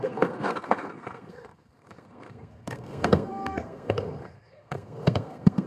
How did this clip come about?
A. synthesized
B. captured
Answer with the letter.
A